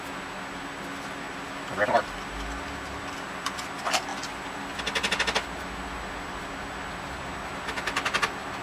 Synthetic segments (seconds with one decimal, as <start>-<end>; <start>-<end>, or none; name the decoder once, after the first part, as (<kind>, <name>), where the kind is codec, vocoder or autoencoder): none